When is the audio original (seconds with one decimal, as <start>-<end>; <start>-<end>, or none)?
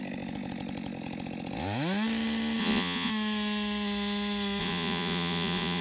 0.0-2.6; 3.1-4.6